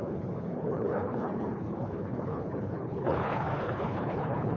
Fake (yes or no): yes